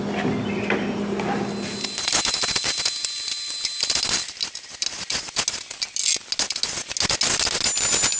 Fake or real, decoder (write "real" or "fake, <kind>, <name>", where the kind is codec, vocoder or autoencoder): real